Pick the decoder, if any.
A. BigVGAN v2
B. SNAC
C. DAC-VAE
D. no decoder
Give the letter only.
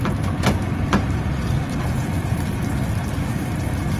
D